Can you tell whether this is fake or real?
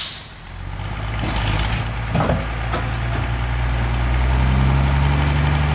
real